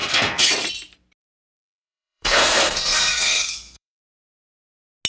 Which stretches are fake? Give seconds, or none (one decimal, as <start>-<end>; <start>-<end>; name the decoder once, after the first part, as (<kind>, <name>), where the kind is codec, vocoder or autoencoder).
0.0-0.5 (codec, SNAC); 1.2-4.3